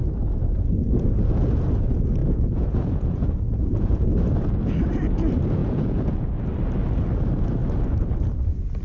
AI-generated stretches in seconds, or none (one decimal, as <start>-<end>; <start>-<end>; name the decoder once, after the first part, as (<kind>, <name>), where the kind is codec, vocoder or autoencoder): 2.2-4.1 (vocoder, Vocos); 5.6-6.3